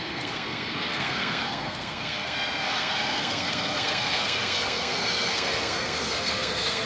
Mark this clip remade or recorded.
remade